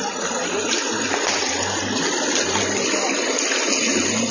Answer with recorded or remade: recorded